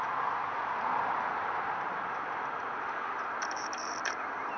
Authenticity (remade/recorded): remade